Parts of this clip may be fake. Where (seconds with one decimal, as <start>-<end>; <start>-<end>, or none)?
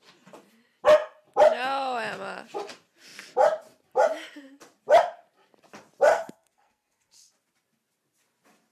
6.1-7.3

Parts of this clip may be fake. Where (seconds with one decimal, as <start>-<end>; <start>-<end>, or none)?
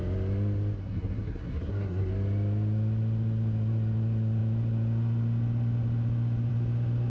0.8-2.1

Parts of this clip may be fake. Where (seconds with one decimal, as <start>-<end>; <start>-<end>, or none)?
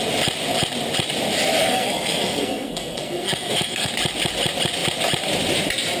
1.6-3.9